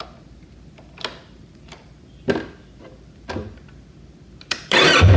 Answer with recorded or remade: recorded